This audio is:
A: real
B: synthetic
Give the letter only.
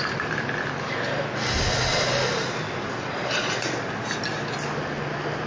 A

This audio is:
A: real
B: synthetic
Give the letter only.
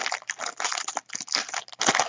A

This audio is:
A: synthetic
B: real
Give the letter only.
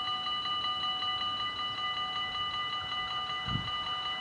B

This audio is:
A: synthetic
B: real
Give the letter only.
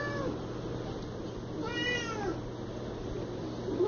B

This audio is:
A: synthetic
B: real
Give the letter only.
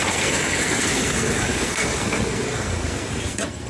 A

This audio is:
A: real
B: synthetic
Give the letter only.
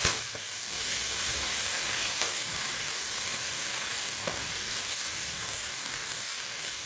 B